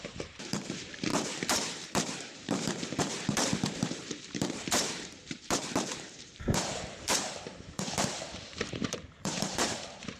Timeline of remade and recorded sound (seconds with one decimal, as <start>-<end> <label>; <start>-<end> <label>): 0.0-10.2 remade

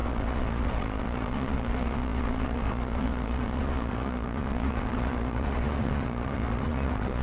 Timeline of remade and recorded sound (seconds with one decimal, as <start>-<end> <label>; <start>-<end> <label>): 0.0-7.2 remade